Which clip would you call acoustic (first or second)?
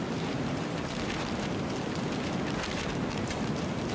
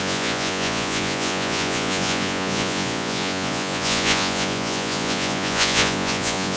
first